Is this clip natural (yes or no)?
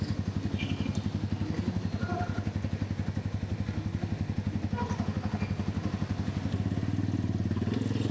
yes